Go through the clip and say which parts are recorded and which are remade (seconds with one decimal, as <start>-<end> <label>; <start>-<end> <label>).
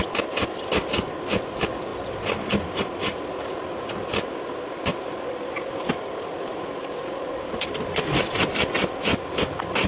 0.0-9.9 recorded